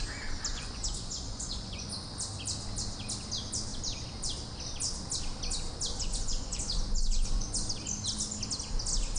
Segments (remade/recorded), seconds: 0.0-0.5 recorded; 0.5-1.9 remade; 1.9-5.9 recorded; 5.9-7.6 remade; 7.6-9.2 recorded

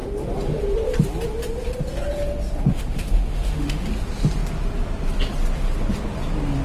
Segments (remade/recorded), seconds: 0.0-2.7 recorded; 2.7-3.9 remade; 3.9-6.6 recorded

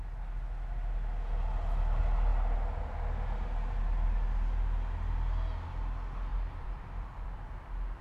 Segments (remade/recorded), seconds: 0.0-6.3 recorded; 6.3-7.5 remade; 7.5-8.0 recorded

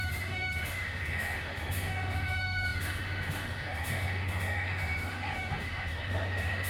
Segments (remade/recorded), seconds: 0.0-6.7 remade

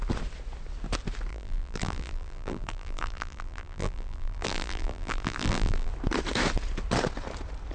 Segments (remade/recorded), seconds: 0.0-1.3 recorded; 1.3-5.9 remade; 5.9-7.7 recorded

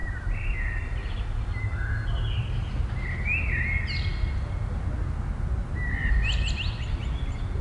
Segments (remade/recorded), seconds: 0.0-7.6 recorded

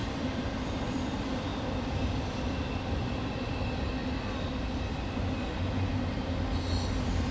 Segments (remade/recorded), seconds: 0.0-1.0 remade; 1.0-1.5 recorded; 1.5-3.3 remade; 3.3-7.3 recorded

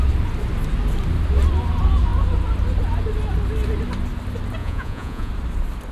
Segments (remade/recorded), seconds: 0.0-4.6 recorded; 4.6-5.3 remade; 5.3-5.9 recorded